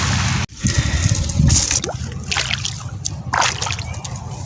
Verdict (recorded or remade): recorded